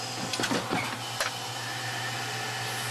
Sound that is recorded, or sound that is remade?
recorded